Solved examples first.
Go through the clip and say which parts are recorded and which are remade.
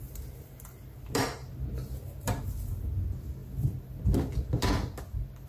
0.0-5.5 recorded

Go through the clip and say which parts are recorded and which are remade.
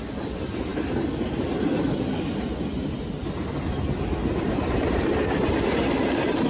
0.0-4.2 recorded; 4.2-6.5 remade